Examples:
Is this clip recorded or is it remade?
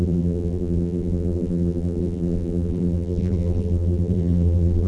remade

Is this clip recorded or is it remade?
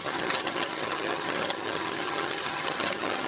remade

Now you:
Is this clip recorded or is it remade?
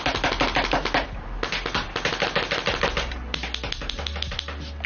recorded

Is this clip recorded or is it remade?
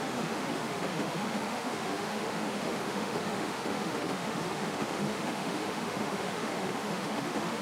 remade